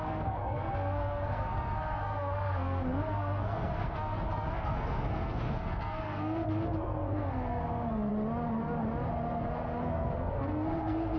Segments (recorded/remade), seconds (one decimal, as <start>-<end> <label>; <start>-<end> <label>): 0.0-8.1 remade; 8.1-9.8 recorded; 9.8-11.2 remade